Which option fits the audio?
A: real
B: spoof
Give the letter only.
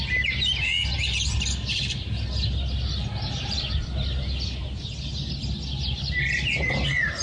A